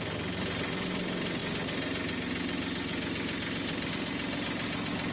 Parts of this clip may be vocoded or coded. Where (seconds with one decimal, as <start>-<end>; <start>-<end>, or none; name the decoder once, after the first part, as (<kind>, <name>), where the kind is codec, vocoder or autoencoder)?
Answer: none